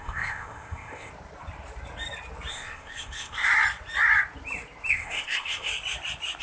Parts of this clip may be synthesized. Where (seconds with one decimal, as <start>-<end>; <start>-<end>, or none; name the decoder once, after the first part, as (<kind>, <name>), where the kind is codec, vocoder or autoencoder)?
0.0-1.1 (codec, ZipCodec); 2.5-3.5; 4.9-5.7